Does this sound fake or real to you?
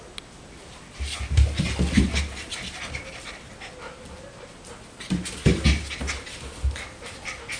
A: real